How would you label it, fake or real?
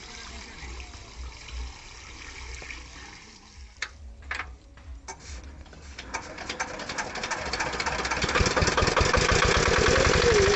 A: real